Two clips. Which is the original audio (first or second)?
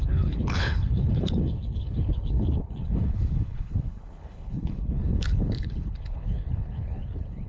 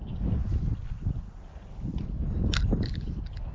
second